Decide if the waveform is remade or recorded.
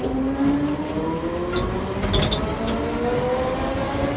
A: recorded